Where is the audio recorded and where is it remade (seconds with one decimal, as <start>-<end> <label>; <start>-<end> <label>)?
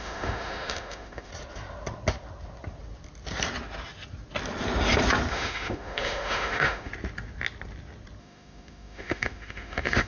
0.0-1.3 remade; 1.3-5.3 recorded; 5.3-6.9 remade; 6.9-8.2 recorded; 8.2-10.1 remade